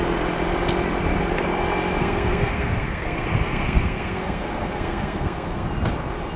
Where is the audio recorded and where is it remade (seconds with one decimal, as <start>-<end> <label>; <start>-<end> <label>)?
0.0-2.0 recorded; 2.0-5.7 remade; 5.7-6.4 recorded